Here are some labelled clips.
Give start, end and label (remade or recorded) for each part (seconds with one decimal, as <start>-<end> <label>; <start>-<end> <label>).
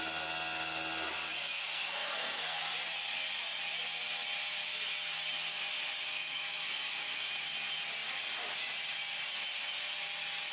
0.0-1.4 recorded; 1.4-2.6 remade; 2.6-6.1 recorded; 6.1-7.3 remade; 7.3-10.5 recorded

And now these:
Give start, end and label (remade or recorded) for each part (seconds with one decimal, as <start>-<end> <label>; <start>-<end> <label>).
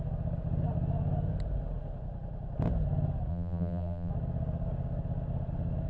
0.0-3.3 recorded; 3.3-4.1 remade; 4.1-5.9 recorded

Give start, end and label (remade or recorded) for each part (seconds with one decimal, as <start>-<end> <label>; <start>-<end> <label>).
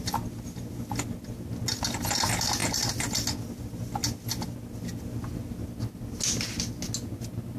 0.0-7.6 recorded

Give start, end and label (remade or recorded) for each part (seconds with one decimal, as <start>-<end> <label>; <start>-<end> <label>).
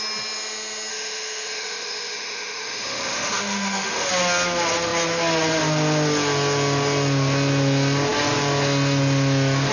0.0-0.9 recorded; 0.9-4.1 remade; 4.1-9.7 recorded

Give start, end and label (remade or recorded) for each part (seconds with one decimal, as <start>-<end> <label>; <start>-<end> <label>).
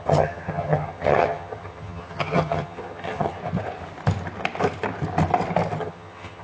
0.0-3.4 remade; 3.4-5.8 recorded; 5.8-6.4 remade